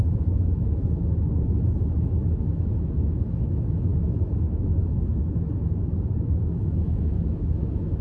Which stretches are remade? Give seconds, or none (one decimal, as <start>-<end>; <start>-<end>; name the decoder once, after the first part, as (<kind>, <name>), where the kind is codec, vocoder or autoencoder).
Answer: 0.0-8.0 (autoencoder, DAC-VAE)